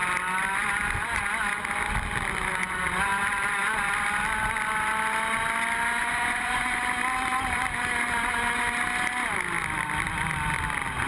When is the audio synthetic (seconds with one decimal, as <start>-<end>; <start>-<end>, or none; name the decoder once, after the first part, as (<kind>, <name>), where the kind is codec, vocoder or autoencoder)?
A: 6.0-6.8 (vocoder, Vocos)